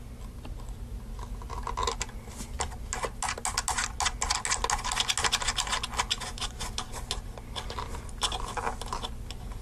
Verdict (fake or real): real